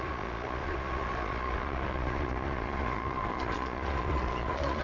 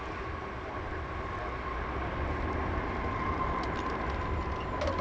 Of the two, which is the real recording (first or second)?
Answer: second